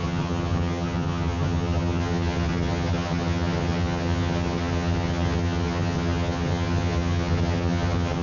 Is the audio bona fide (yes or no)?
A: no